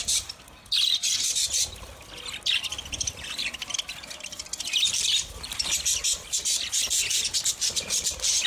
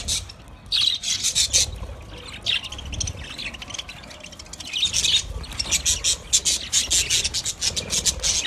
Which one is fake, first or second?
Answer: first